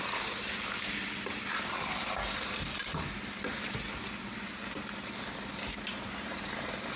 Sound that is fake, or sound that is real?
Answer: real